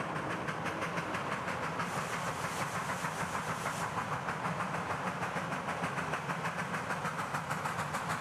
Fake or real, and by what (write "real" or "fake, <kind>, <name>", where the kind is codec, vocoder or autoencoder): fake, vocoder, BigVGAN v2